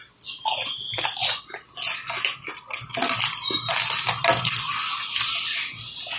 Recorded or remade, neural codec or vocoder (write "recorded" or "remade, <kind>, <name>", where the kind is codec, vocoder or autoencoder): recorded